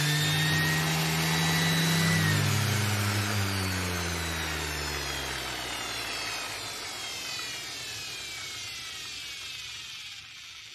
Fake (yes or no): no